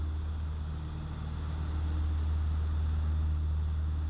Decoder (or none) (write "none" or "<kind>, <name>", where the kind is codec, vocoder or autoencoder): none